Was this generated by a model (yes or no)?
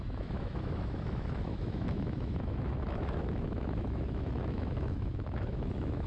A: yes